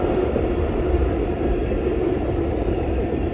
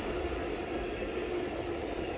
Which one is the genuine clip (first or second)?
second